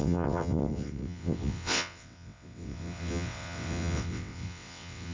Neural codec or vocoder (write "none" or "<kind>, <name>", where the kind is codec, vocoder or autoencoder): vocoder, WaveNeXt